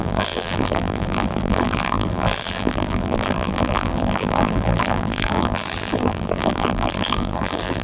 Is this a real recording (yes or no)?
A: no